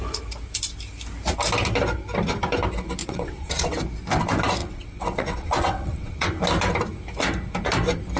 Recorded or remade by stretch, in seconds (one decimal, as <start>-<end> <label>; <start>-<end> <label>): 0.0-3.0 recorded; 3.0-3.8 remade; 3.8-4.6 recorded; 4.6-6.4 remade; 6.4-8.2 recorded